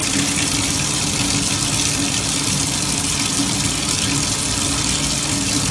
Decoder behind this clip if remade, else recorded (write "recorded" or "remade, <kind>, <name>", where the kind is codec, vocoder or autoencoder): recorded